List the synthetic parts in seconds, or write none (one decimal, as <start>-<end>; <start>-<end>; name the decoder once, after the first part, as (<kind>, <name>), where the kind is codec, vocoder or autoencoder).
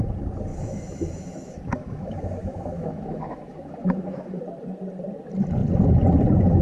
0.5-4.4 (autoencoder, DAC-VAE)